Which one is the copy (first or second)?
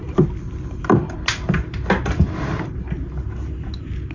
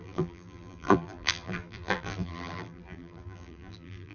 second